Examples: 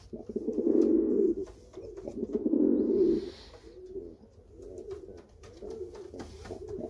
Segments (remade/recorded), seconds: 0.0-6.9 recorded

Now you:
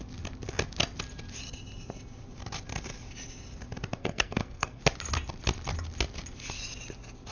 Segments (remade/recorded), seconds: 0.0-4.0 recorded; 4.0-4.8 remade; 4.8-7.3 recorded

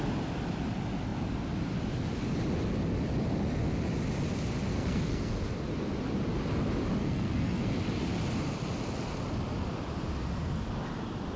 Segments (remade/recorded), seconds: 0.0-4.7 recorded; 4.7-5.3 remade; 5.3-7.0 recorded; 7.0-7.7 remade; 7.7-11.4 recorded

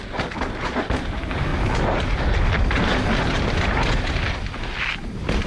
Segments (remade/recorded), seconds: 0.0-5.5 recorded

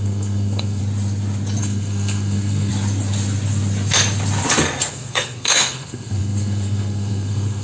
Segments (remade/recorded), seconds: 0.0-0.8 remade; 0.8-1.6 recorded; 1.6-2.7 remade; 2.7-4.9 recorded; 4.9-7.6 remade

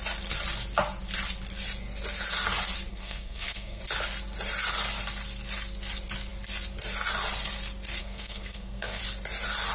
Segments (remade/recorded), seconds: 0.0-2.9 recorded; 2.9-3.8 remade; 3.8-8.0 recorded; 8.0-9.0 remade; 9.0-9.7 recorded

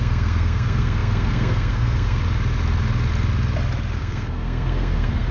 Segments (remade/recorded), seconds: 0.0-2.2 remade; 2.2-4.0 recorded; 4.0-5.3 remade

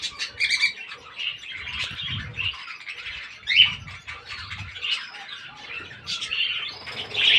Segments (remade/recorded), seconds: 0.0-7.4 recorded